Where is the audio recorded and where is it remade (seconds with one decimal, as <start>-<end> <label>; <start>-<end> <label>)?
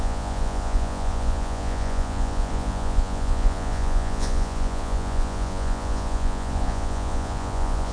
0.0-7.9 remade